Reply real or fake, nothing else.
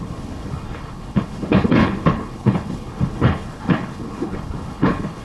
fake